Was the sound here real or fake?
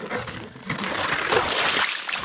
real